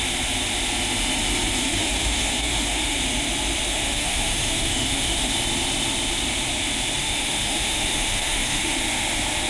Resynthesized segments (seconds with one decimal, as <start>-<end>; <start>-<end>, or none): 1.6-3.0; 3.7-5.3; 7.0-8.8